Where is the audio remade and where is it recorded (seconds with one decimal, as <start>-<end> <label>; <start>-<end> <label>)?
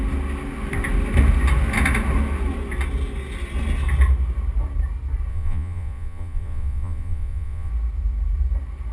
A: 0.0-5.3 recorded; 5.3-7.7 remade; 7.7-8.9 recorded